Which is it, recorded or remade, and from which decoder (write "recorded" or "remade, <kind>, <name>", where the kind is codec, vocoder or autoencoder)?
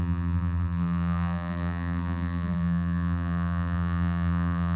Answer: remade, vocoder, BigVGAN v2